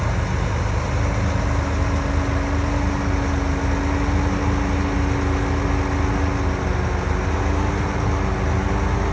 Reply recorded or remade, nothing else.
recorded